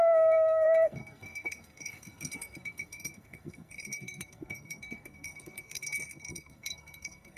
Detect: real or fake fake